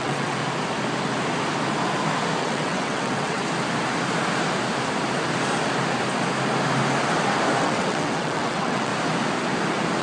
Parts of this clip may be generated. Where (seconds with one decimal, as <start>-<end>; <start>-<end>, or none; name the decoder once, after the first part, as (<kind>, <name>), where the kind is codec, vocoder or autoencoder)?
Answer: 0.0-0.4 (vocoder, WaveNeXt); 2.4-3.4; 7.6-8.9